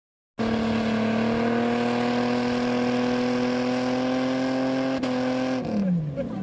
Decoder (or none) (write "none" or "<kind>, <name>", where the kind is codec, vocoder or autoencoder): none